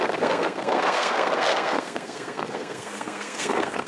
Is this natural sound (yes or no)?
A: no